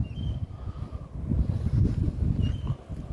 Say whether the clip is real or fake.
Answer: real